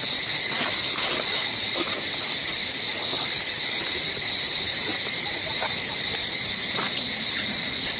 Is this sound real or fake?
real